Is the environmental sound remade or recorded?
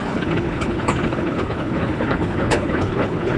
remade